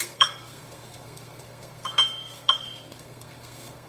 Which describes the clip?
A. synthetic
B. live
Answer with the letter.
A